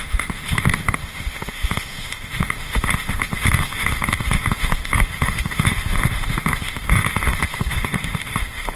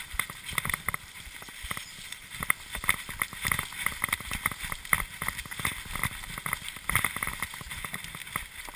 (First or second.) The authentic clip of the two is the second